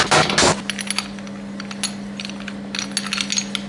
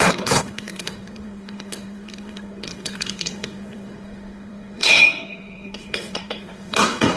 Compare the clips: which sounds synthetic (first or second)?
second